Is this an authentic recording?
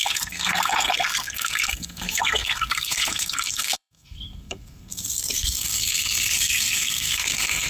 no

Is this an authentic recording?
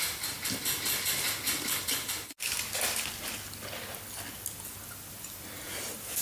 yes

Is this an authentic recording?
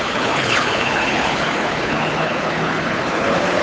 no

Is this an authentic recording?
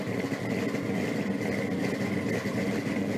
yes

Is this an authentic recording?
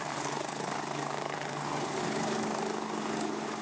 no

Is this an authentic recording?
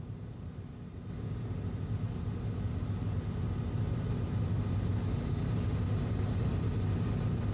yes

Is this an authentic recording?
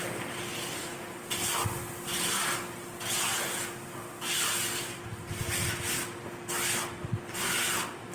yes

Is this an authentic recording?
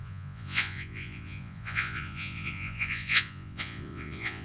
no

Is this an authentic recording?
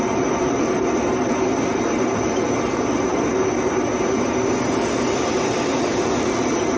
no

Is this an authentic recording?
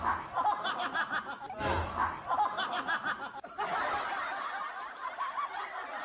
yes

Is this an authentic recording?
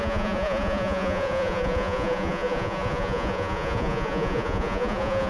no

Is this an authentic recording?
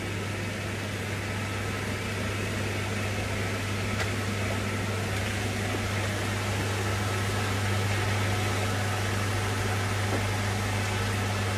yes